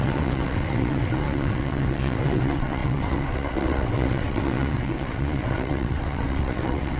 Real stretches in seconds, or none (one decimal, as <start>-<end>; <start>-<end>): none